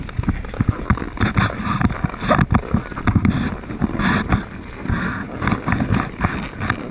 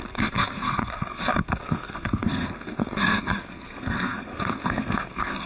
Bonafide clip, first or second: first